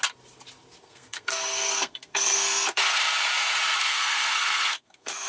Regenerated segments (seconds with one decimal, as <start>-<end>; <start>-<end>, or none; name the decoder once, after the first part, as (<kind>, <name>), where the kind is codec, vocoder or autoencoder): 0.8-3.0 (codec, SNAC); 3.8-5.3